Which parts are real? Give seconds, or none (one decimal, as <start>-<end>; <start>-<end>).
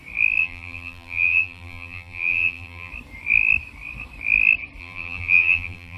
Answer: 0.0-0.4; 2.9-4.8